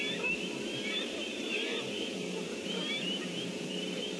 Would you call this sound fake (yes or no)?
yes